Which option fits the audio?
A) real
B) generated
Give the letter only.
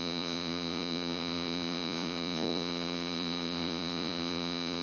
B